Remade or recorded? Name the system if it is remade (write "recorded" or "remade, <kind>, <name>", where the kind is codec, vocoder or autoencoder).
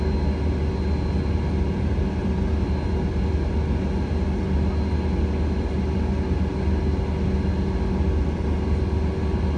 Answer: recorded